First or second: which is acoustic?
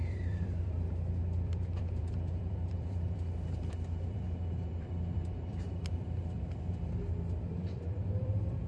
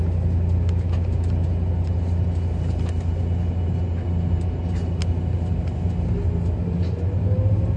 second